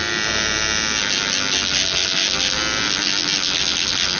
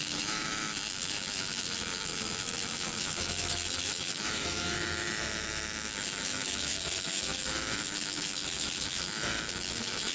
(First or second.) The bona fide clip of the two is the first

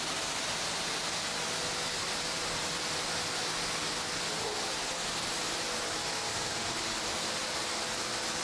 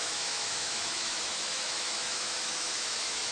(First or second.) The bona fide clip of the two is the first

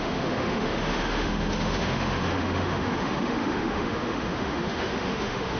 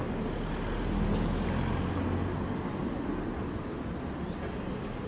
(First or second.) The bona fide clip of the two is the second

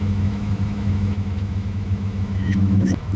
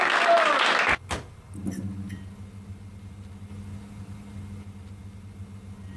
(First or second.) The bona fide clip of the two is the second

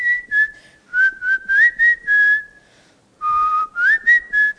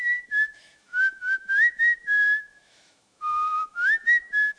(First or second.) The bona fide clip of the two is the first